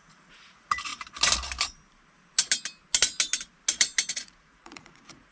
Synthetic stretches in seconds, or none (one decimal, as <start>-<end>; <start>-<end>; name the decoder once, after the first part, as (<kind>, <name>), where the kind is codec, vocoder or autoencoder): 0.0-0.9 (vocoder, Vocos); 4.1-5.3